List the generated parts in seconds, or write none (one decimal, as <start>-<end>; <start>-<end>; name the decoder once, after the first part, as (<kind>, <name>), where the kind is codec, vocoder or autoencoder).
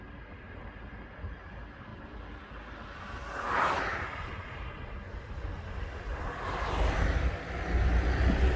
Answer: none